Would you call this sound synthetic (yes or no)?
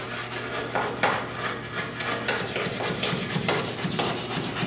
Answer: no